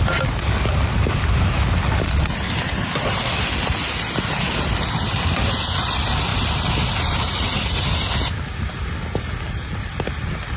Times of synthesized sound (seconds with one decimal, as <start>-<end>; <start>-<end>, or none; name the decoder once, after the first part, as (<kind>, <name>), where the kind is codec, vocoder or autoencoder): none